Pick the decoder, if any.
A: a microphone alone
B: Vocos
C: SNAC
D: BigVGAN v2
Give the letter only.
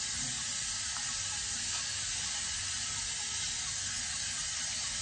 A